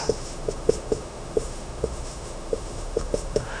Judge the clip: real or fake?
fake